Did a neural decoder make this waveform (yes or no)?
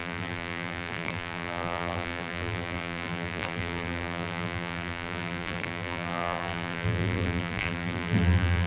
yes